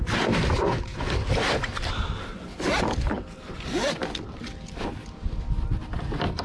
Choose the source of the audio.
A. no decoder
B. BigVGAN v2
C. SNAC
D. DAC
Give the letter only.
A